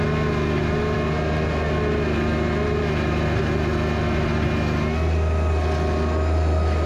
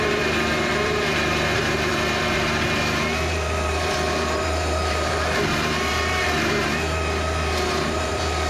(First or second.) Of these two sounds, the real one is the first